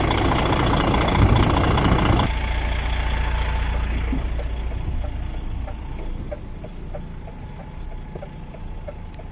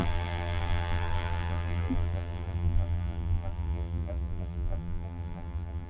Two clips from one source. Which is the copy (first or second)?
second